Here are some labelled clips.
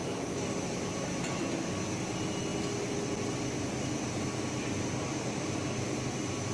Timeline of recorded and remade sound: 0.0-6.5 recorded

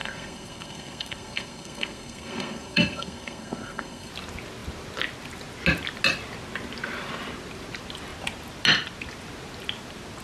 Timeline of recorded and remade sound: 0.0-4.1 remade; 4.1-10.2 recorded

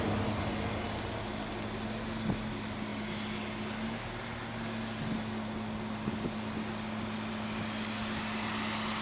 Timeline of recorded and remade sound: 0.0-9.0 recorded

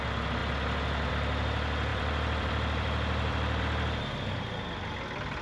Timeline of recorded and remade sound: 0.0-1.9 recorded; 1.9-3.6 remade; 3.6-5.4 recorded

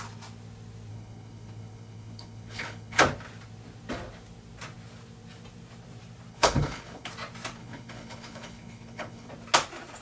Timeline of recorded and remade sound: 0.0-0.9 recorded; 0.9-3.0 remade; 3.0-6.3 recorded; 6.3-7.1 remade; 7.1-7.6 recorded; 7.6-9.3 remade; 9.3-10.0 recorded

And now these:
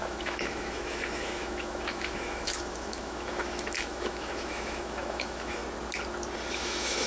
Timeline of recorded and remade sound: 0.0-5.6 remade; 5.6-6.5 recorded; 6.5-7.1 remade

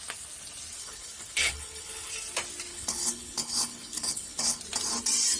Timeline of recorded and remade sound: 0.0-0.8 recorded; 0.8-2.1 remade; 2.1-2.7 recorded; 2.7-4.6 remade; 4.6-5.4 recorded

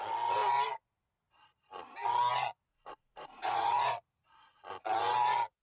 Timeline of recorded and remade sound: 0.0-2.7 recorded; 2.7-3.9 remade; 3.9-5.6 recorded